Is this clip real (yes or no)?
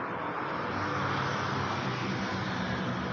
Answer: yes